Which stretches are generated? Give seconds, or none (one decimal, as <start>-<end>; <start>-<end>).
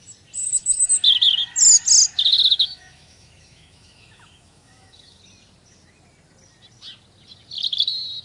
0.4-0.9; 2.3-5.2